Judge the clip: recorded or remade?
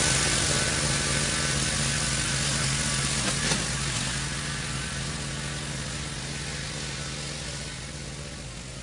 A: recorded